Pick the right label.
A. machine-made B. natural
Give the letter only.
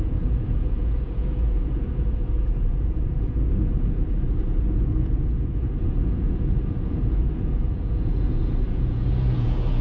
A